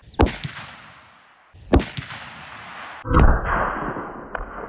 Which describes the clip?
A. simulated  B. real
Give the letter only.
B